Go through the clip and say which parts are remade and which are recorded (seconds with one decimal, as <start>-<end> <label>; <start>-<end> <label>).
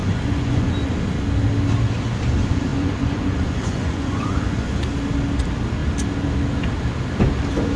0.0-0.9 remade; 0.9-2.7 recorded; 2.7-4.7 remade; 4.7-7.8 recorded